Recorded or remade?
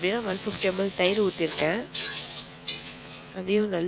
remade